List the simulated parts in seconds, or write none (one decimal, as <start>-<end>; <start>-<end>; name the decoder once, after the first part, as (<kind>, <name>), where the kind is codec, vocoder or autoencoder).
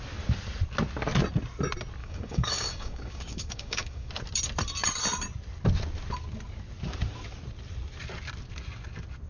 2.0-4.1 (codec, DAC)